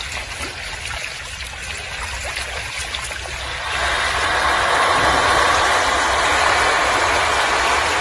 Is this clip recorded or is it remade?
recorded